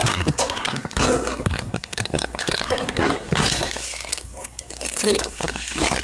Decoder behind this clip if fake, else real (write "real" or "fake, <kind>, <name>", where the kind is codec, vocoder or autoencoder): fake, codec, SNAC